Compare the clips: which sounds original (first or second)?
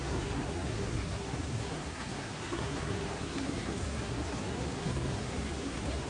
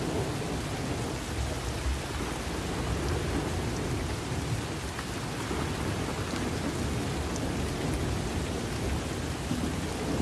second